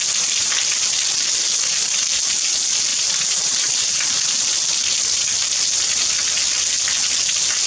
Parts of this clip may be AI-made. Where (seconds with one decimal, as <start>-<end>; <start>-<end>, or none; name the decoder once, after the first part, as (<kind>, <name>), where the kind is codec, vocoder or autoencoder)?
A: 2.9-4.1 (vocoder, BigVGAN v2)